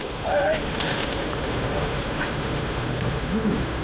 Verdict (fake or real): fake